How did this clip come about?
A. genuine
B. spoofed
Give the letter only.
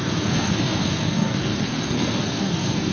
B